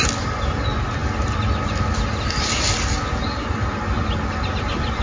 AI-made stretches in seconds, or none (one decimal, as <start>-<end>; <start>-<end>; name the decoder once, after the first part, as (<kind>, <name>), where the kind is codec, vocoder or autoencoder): none